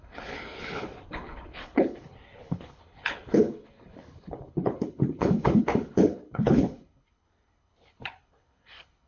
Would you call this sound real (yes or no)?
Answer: no